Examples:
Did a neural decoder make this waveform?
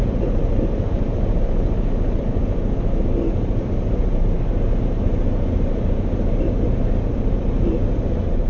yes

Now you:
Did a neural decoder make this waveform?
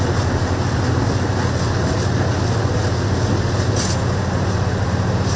no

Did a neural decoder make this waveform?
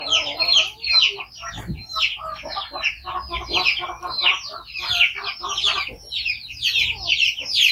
no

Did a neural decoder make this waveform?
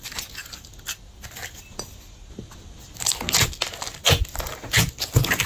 no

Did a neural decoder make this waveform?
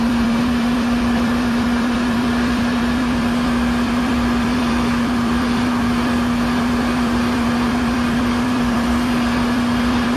yes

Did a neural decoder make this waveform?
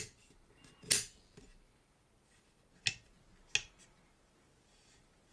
no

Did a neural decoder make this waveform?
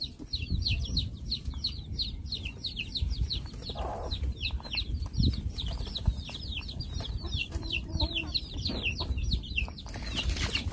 yes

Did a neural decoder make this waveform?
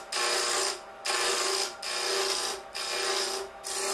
no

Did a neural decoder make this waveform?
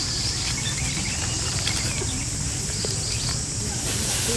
no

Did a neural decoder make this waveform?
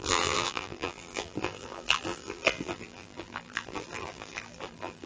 yes